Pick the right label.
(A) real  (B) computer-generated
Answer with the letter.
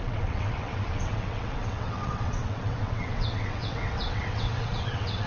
B